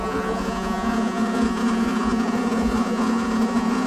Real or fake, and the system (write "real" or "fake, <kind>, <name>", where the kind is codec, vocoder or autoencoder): fake, vocoder, Vocos